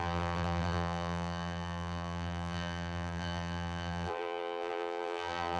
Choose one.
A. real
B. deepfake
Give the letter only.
B